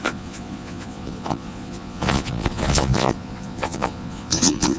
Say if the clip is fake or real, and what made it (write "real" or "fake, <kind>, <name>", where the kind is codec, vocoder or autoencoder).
fake, vocoder, Vocos